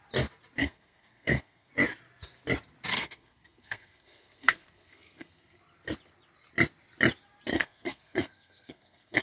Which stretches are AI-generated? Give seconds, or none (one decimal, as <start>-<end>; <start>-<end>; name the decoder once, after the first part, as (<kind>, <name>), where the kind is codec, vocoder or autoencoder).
0.6-1.7 (codec, SNAC); 2.9-5.6; 7.5-9.2